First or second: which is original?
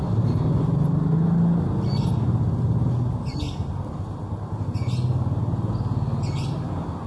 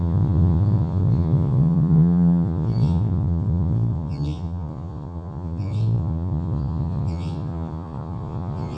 first